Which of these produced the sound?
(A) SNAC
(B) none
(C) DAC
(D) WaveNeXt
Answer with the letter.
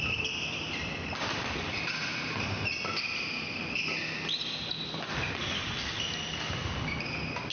B